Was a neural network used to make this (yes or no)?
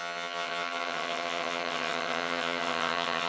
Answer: yes